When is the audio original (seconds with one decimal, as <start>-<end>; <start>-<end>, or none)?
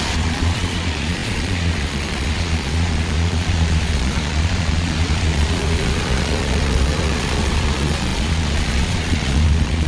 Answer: none